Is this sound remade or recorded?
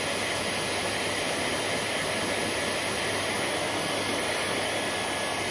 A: recorded